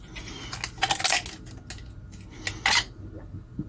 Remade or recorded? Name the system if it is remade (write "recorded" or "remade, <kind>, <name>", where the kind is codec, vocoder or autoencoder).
recorded